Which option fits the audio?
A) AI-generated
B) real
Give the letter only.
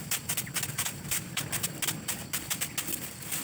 B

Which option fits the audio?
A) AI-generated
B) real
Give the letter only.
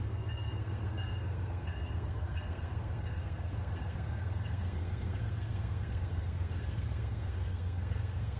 A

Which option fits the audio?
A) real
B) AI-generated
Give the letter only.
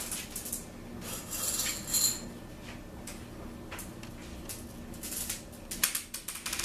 A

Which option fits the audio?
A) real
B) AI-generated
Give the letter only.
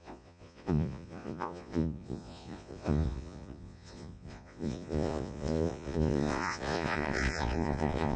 B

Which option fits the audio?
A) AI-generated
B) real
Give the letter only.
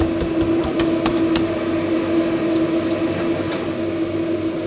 B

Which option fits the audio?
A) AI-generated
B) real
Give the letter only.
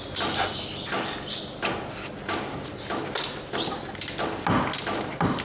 B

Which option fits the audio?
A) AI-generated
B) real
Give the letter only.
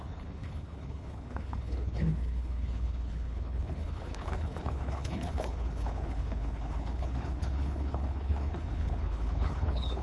A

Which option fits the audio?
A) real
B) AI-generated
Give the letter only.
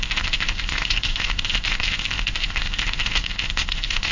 B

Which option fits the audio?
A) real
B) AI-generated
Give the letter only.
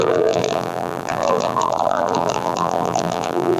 B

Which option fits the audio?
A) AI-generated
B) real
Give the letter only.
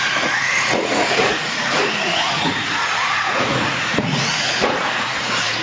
A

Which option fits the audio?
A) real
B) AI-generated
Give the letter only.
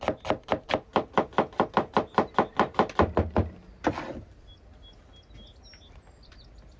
A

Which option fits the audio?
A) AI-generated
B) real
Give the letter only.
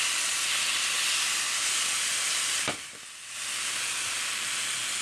B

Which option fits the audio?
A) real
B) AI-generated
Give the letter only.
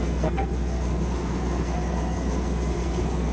B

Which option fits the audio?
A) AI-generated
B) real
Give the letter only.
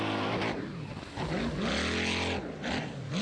B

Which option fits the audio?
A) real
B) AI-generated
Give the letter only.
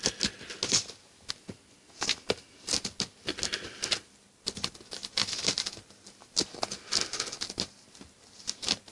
A